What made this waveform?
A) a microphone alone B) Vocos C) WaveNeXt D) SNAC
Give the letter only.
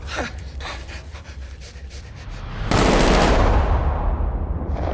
A